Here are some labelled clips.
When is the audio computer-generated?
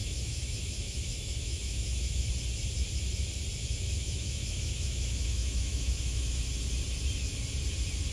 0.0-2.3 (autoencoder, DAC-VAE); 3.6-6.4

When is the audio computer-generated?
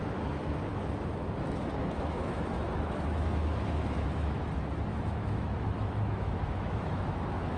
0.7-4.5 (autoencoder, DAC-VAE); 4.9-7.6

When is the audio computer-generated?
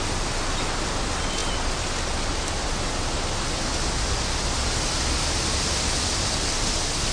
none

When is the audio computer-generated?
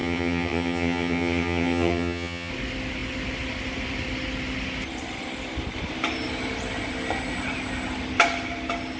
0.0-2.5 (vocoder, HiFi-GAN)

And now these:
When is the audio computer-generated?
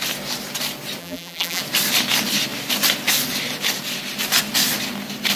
1.0-1.6 (vocoder, BigVGAN v2)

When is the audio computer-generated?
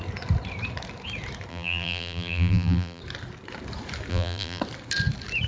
1.5-3.0 (vocoder, BigVGAN v2); 4.1-4.6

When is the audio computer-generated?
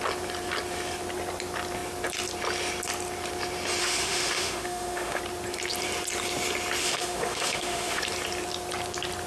3.8-5.2 (autoencoder, DAC-VAE); 6.8-8.0